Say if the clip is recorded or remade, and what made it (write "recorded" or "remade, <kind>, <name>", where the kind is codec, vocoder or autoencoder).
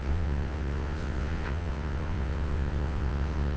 remade, vocoder, WaveNeXt